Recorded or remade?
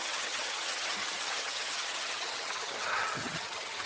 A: remade